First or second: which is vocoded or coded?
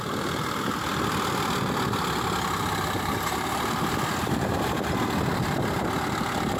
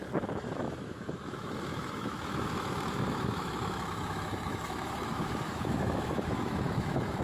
second